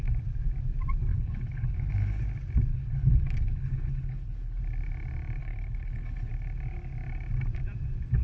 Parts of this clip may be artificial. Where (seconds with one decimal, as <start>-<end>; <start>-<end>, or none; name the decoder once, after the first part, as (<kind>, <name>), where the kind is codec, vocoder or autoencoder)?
1.1-2.2 (codec, HILCodec); 2.7-4.6; 5.4-6.3